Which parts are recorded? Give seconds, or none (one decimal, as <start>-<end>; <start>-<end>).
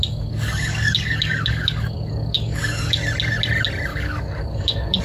3.0-3.9